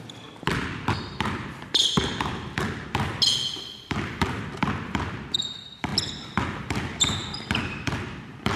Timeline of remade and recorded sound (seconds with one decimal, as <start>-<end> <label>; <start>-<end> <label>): 0.0-3.1 remade; 3.1-3.7 recorded; 3.7-5.9 remade; 5.9-6.4 recorded; 6.4-8.6 remade